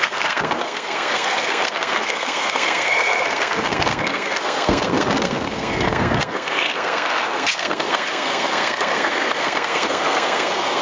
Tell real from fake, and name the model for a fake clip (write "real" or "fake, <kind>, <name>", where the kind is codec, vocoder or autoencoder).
fake, codec, SNAC